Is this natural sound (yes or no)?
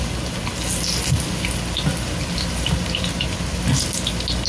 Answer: yes